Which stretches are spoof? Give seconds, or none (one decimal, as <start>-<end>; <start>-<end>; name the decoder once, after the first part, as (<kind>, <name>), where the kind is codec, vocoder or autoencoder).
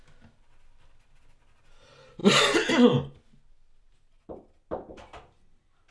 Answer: none